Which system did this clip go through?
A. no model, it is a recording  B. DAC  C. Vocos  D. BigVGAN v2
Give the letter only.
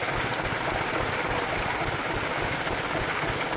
D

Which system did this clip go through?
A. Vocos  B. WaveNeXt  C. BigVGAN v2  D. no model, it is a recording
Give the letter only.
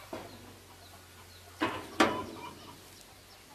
D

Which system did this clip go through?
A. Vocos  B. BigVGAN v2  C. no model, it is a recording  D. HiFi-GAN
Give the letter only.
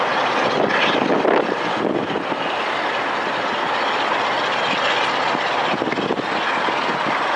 C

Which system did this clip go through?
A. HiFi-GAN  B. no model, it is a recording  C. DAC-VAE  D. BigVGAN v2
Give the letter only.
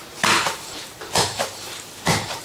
D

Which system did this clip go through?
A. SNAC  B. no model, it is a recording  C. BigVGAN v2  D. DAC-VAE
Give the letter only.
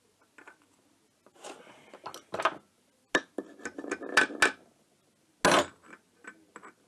B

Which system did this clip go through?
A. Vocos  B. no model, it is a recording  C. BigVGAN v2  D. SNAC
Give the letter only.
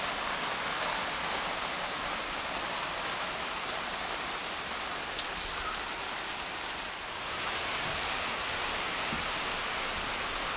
B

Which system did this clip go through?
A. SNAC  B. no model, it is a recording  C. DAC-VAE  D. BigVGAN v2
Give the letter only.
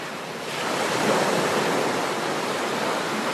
B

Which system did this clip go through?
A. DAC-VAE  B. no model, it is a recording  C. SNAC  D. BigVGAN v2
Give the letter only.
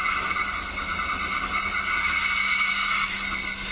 B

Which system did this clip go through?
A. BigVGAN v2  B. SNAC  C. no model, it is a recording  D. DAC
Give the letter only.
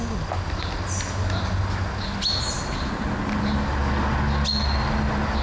C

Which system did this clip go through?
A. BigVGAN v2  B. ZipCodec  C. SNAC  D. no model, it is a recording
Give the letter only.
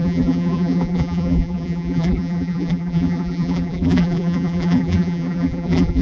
A